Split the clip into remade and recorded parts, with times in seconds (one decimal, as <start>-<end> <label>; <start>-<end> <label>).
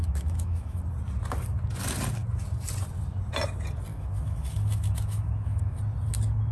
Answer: 0.0-0.8 remade; 0.8-3.9 recorded; 3.9-5.8 remade; 5.8-6.5 recorded